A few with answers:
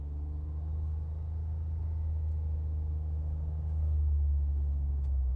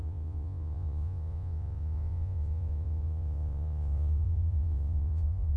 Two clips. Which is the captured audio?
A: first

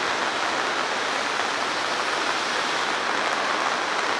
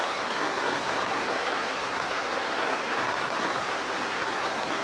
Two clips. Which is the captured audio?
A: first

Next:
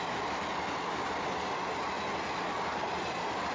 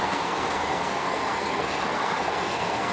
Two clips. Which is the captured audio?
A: first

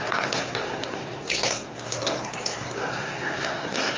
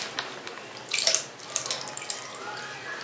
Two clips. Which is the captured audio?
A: second